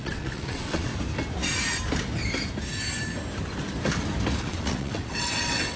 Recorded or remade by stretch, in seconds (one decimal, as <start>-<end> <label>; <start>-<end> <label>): 0.0-0.9 remade; 0.9-4.4 recorded; 4.4-5.8 remade